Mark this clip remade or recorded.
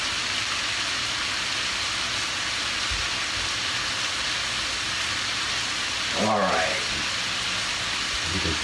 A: recorded